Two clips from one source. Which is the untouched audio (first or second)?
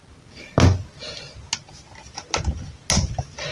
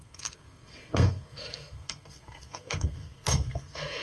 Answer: first